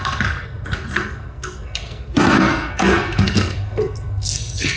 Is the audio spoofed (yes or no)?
yes